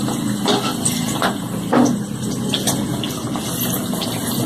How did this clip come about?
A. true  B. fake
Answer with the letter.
A